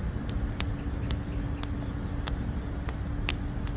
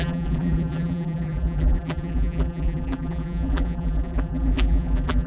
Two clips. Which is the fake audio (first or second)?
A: second